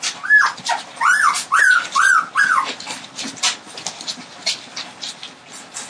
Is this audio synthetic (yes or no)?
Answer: no